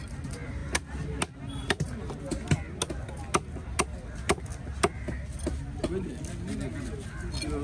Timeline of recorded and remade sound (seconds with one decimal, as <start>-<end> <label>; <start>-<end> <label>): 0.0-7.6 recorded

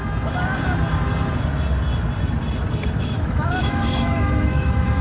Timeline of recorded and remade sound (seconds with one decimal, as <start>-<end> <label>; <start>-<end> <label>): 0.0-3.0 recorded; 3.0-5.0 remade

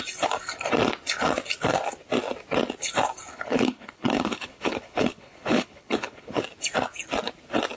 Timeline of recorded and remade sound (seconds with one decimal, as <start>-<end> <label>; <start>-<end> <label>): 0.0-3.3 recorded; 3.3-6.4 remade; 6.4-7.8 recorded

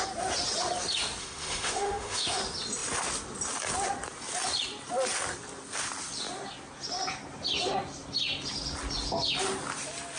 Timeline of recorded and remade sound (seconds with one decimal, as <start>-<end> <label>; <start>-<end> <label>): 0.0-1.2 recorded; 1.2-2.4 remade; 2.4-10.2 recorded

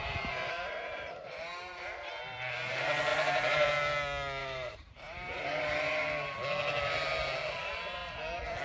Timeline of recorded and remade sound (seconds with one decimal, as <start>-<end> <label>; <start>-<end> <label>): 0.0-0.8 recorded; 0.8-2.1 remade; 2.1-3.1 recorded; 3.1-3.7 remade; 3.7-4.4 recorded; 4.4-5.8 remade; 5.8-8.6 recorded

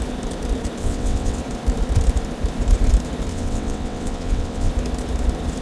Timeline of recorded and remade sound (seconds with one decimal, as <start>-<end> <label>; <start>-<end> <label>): 0.0-0.8 recorded; 0.8-1.4 remade; 1.4-3.3 recorded; 3.3-4.7 remade; 4.7-5.6 recorded

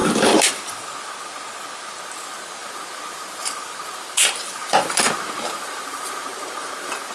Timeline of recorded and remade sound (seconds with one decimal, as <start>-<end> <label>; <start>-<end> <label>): 0.0-2.6 recorded; 2.6-7.1 remade